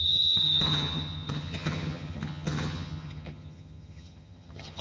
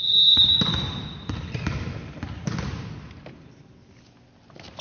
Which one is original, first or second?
second